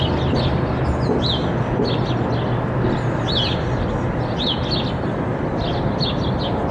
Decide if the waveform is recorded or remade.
recorded